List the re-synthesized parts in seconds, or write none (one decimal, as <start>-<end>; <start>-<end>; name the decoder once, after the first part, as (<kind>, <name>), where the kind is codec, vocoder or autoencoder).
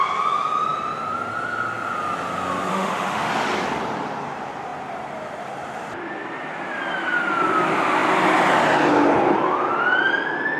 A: 2.7-3.3 (autoencoder, DAC-VAE)